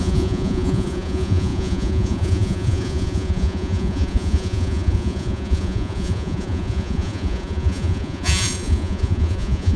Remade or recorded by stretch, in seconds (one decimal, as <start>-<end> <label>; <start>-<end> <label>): 0.0-9.8 remade